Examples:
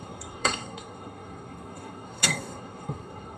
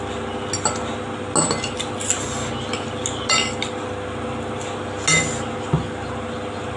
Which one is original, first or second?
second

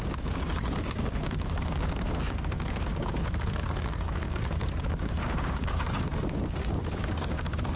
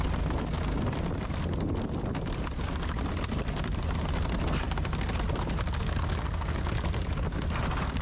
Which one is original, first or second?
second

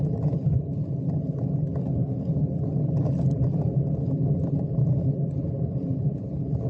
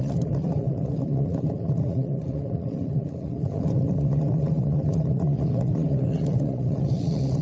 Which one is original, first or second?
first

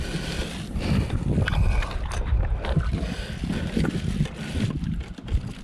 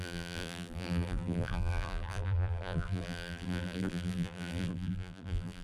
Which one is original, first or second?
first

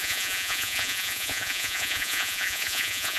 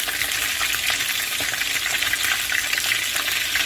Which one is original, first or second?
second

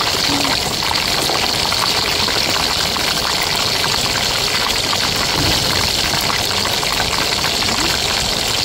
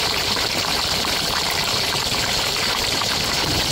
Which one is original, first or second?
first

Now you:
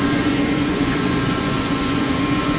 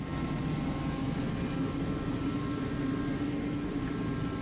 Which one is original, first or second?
second